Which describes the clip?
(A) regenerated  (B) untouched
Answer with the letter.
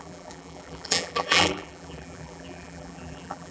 A